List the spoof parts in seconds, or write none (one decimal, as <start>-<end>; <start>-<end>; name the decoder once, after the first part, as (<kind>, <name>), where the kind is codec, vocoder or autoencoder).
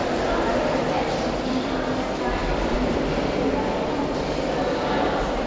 none